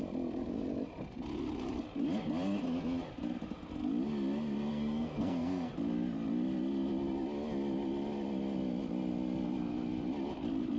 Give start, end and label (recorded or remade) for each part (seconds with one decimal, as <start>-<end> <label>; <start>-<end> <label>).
0.0-4.7 recorded; 4.7-5.7 remade; 5.7-10.8 recorded

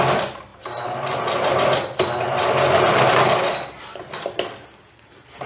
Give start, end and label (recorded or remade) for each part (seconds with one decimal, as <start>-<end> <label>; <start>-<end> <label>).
0.0-5.5 recorded

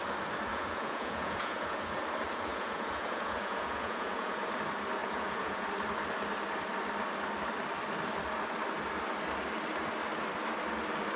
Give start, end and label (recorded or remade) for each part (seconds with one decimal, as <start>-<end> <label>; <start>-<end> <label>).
0.0-0.5 recorded; 0.5-2.0 remade; 2.0-2.5 recorded; 2.5-4.4 remade; 4.4-5.0 recorded; 5.0-5.7 remade; 5.7-11.2 recorded

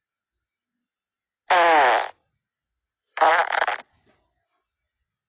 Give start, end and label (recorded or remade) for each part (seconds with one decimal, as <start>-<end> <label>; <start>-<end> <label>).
0.0-5.3 recorded